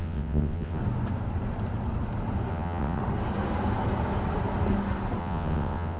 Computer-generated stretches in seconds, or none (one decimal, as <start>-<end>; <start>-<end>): 0.0-0.8; 2.5-3.0; 5.2-6.0